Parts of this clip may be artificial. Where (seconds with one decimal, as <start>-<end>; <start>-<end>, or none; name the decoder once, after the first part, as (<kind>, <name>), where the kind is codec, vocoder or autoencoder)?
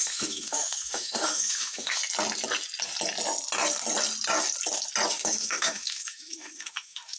0.0-2.0 (autoencoder, DAC-VAE); 5.1-7.2